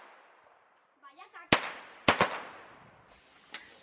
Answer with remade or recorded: recorded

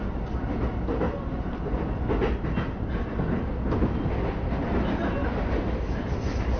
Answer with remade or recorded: recorded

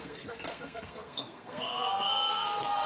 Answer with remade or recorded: remade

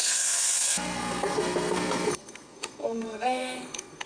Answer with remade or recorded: remade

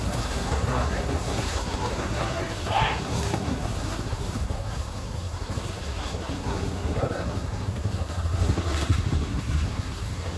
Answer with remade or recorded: remade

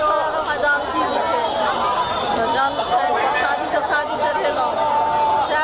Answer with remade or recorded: recorded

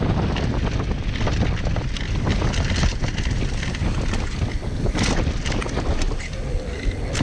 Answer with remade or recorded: recorded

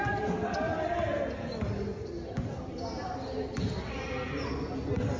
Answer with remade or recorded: recorded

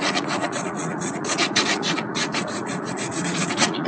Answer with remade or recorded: remade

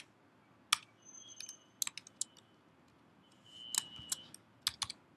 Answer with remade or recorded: recorded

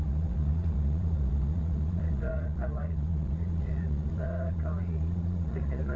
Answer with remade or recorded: remade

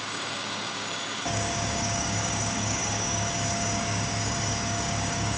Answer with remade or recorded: remade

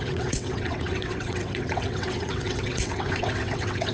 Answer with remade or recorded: remade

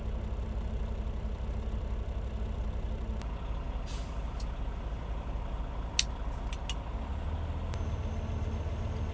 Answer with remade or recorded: recorded